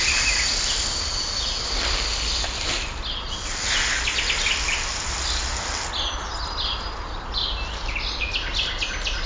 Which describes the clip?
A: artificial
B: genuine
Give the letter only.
B